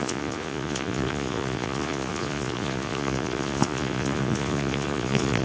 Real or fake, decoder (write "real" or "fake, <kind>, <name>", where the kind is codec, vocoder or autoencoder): fake, vocoder, Vocos